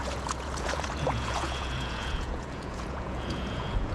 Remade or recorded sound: remade